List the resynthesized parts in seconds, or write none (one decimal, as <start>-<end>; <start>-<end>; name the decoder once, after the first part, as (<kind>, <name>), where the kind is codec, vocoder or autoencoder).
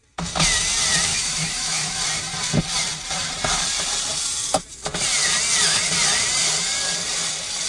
1.1-2.0 (autoencoder, DAC-VAE)